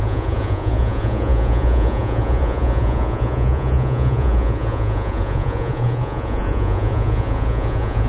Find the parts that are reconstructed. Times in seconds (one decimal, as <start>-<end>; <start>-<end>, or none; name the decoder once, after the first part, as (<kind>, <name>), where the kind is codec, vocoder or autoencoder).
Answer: 0.0-8.1 (vocoder, Vocos)